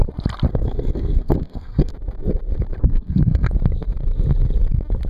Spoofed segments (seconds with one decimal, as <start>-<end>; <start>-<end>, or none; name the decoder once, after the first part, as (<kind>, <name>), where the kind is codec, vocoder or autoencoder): 0.5-1.9 (codec, SNAC); 2.8-3.5